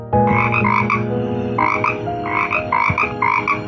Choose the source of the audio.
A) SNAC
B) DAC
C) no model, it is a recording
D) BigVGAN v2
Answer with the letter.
C